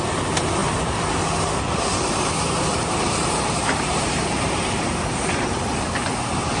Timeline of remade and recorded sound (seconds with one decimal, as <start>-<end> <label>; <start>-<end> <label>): 0.0-1.9 recorded; 1.9-5.9 remade; 5.9-6.6 recorded